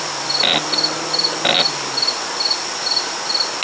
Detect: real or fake real